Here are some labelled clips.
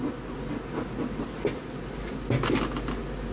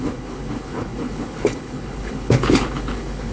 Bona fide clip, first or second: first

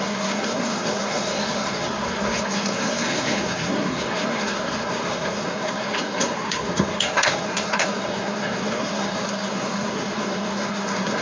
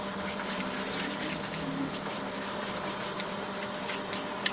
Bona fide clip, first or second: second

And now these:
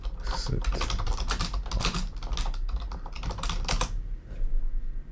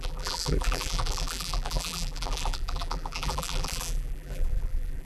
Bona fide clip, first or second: first